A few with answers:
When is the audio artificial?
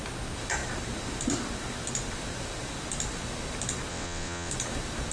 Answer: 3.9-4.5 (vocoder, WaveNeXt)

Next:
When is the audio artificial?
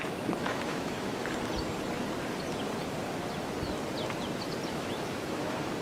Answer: 0.0-1.2 (autoencoder, DAC-VAE); 4.7-5.8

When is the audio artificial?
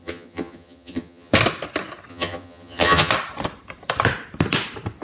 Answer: 0.0-1.3 (vocoder, HiFi-GAN); 2.1-3.1